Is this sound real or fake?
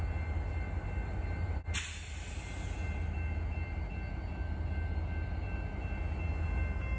real